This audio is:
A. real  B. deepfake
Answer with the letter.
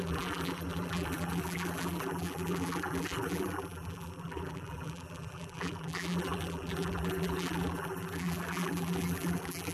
B